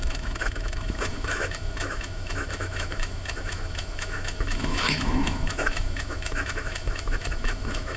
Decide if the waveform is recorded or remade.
remade